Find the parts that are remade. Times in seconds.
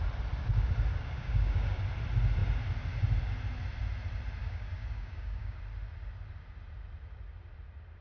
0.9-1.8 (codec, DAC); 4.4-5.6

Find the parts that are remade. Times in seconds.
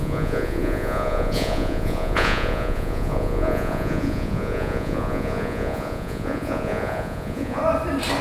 0.0-7.6 (vocoder, Vocos)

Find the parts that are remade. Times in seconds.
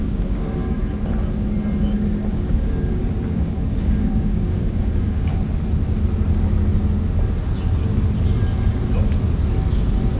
0.0-0.8 (codec, DAC); 2.3-5.3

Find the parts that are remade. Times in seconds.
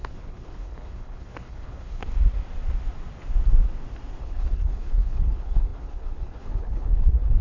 0.0-2.1 (codec, HILCodec); 4.2-7.4